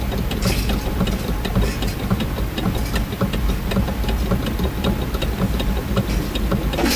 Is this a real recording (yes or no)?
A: yes